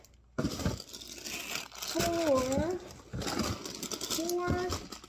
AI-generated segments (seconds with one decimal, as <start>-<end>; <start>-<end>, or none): none